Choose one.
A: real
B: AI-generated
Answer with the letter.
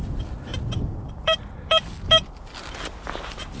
A